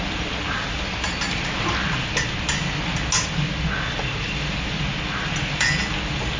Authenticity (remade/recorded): recorded